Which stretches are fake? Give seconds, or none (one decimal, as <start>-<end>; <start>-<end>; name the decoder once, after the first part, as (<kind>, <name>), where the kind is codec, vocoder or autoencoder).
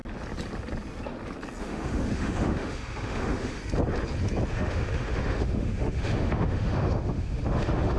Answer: 1.6-3.6 (autoencoder, DAC-VAE); 4.5-8.0